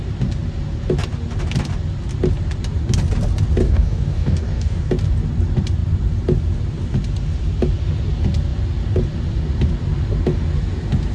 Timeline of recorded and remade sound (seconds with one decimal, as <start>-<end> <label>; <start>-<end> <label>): 0.0-3.6 recorded; 3.6-4.9 remade; 4.9-11.1 recorded